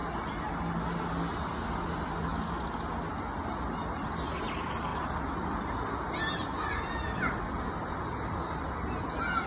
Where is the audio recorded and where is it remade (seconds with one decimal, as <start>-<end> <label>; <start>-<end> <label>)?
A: 0.0-9.5 recorded